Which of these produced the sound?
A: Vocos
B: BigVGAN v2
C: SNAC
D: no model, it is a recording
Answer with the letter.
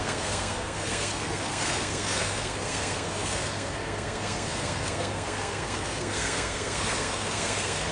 C